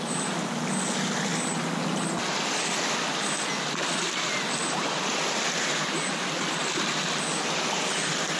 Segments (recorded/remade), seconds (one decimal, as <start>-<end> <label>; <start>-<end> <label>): 0.0-8.4 recorded